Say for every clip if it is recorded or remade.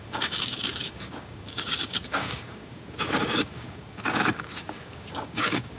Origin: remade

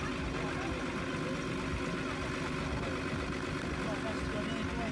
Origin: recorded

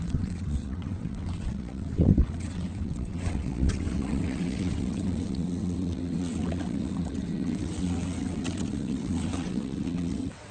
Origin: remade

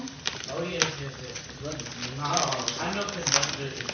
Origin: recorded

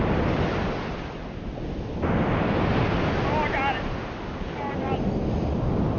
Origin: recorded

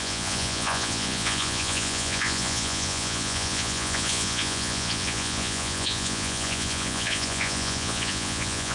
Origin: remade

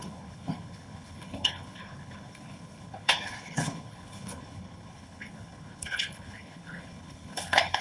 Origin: remade